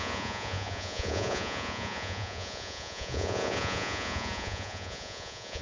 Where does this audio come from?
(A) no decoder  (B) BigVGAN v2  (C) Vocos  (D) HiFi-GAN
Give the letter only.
C